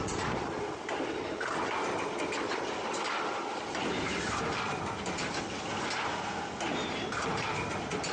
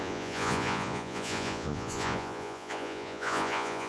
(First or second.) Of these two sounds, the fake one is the second